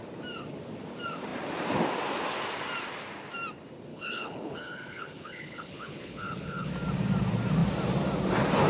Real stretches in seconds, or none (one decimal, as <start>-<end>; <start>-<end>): 0.0-3.9; 6.7-8.7